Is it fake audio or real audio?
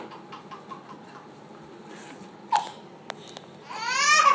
real